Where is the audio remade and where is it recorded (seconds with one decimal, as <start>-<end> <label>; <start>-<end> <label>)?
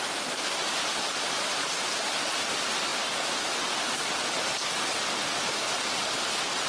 0.0-6.7 recorded